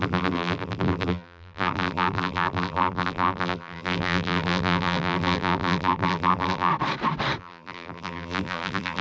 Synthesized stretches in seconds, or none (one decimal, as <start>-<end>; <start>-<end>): 0.0-6.7; 7.4-9.0